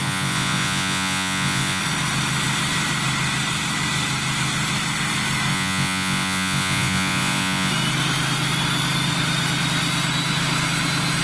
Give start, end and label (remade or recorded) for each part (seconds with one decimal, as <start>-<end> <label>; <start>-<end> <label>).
0.0-1.8 remade; 1.8-5.5 recorded; 5.5-7.7 remade; 7.7-11.2 recorded